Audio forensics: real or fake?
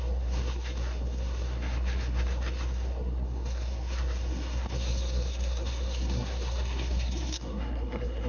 fake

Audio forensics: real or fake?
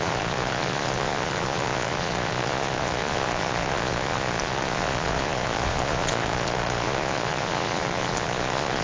fake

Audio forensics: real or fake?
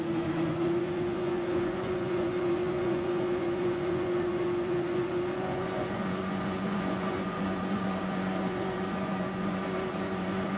fake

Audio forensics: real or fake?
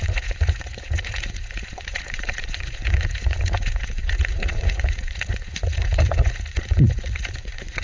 fake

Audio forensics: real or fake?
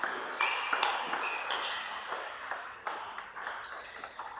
real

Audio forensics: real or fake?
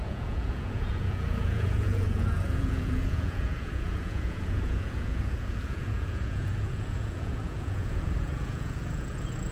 fake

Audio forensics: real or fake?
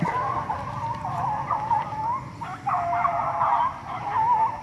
real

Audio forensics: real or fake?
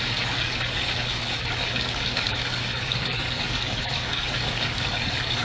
fake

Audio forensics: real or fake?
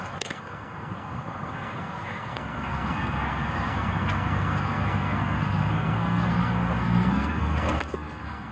fake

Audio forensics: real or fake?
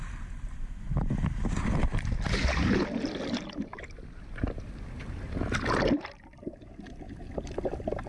real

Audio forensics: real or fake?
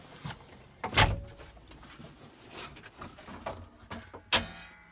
real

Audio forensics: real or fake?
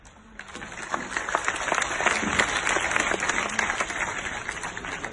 real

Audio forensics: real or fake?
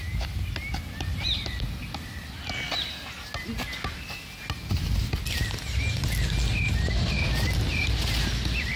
real